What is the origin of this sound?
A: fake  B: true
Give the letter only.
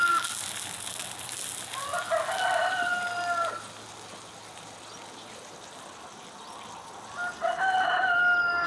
B